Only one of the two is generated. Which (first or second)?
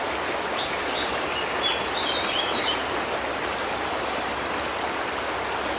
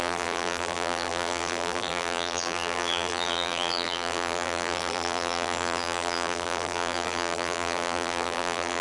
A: second